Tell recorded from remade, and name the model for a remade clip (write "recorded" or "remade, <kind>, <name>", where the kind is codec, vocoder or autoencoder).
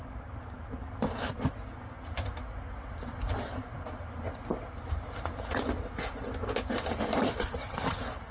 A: recorded